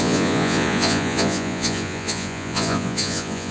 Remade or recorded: remade